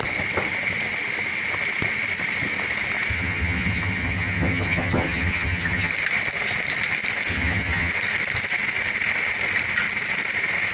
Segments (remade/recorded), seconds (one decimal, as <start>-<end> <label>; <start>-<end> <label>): 0.0-3.1 recorded; 3.1-5.9 remade; 5.9-7.3 recorded; 7.3-7.9 remade; 7.9-10.7 recorded